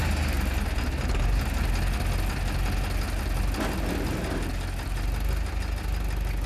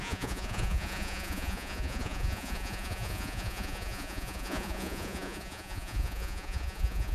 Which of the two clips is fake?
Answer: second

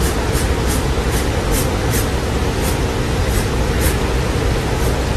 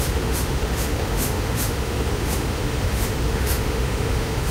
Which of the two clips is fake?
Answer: second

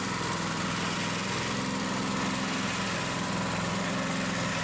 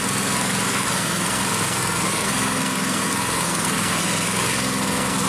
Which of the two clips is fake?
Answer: second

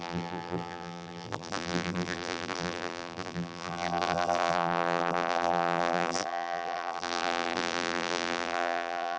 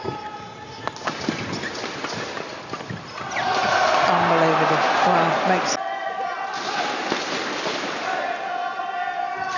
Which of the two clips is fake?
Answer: first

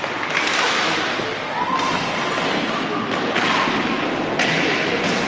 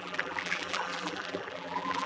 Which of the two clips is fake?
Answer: second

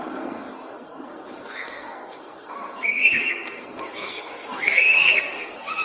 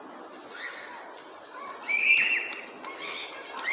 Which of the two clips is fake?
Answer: first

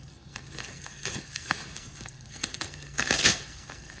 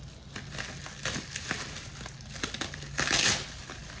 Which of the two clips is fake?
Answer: first